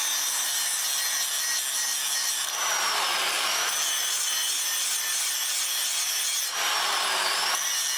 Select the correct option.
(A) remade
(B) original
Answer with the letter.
B